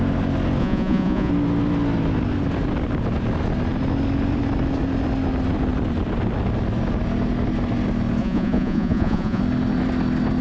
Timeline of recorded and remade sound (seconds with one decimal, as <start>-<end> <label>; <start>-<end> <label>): 0.0-0.6 recorded; 0.6-1.3 remade; 1.3-8.2 recorded; 8.2-9.4 remade; 9.4-10.4 recorded